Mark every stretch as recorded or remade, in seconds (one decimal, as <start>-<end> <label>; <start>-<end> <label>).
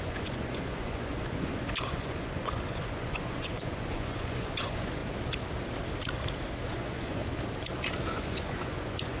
0.0-5.0 remade; 5.0-6.7 recorded; 6.7-7.2 remade; 7.2-8.1 recorded; 8.1-9.2 remade